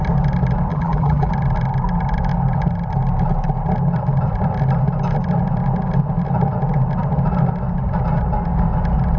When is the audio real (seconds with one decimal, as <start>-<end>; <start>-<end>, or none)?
0.0-0.7; 1.3-9.2